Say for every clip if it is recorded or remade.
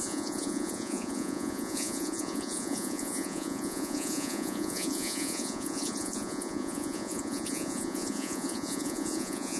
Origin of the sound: remade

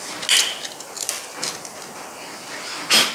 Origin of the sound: recorded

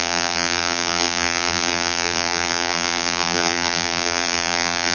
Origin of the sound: remade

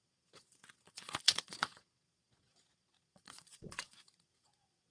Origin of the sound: remade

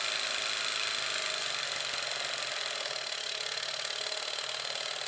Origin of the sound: recorded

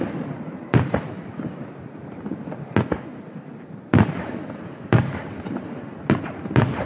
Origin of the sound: recorded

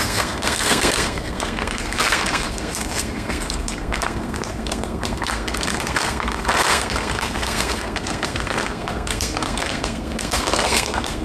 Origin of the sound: remade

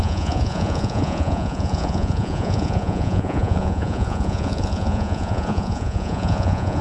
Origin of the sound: remade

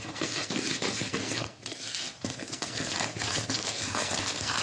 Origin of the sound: remade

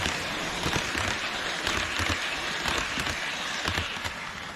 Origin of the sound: recorded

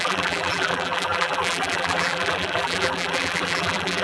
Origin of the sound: remade